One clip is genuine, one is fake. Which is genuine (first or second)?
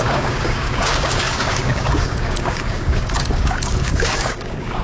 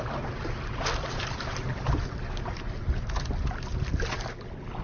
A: second